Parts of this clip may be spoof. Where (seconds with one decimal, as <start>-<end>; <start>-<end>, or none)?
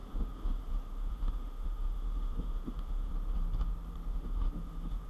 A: 0.0-3.1; 4.1-5.1